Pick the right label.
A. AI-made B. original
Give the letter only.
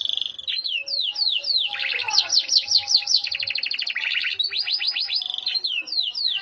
B